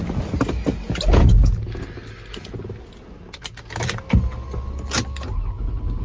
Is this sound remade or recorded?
recorded